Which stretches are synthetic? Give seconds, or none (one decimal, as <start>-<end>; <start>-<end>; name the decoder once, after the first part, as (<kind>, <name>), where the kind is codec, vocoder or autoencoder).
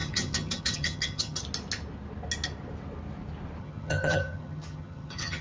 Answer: 0.0-1.4 (vocoder, HiFi-GAN); 3.6-5.4